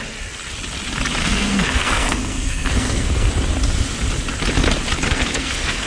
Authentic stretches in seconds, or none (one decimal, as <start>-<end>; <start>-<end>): 0.0-1.2; 3.3-5.1

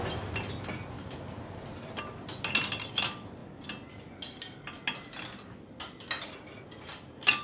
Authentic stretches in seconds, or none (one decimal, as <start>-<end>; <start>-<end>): 0.0-7.4

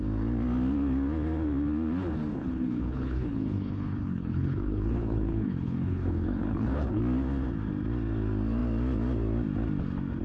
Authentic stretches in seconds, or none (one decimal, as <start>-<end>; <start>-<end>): 0.0-2.3; 7.0-10.2

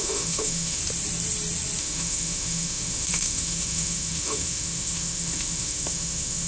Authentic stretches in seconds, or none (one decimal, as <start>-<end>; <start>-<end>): 0.8-1.8

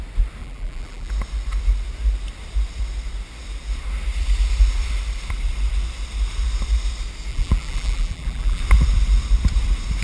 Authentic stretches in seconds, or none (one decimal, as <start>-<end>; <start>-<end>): 0.0-0.4; 1.1-7.3; 8.6-10.0

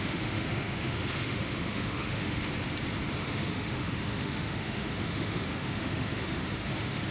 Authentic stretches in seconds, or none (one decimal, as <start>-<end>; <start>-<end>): 2.5-3.2

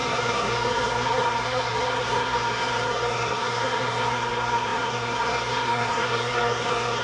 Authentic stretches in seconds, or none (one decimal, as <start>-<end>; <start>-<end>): none

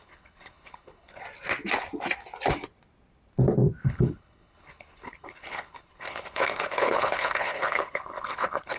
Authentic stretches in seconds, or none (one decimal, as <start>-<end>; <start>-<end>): 1.2-3.8